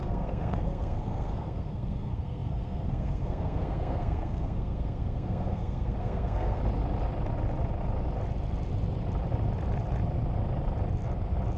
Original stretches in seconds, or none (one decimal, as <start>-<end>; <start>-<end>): 6.6-11.6

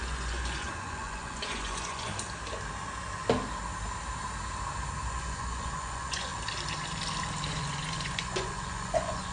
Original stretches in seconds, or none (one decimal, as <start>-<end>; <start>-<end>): 2.1-5.1; 6.3-7.5

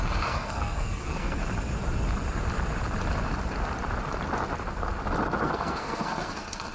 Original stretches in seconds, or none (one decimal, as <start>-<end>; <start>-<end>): 1.4-5.4

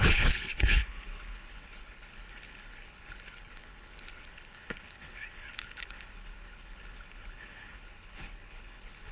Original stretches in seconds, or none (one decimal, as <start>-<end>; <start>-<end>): none